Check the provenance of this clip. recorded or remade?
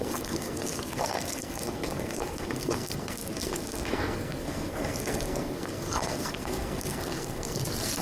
remade